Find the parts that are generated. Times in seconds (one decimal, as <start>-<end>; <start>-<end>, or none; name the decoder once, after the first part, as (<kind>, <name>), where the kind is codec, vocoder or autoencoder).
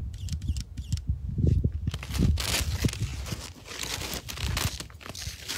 none